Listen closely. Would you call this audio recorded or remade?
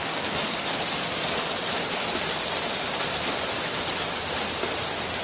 recorded